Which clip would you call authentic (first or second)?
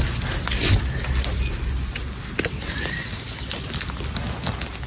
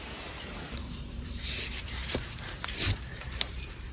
first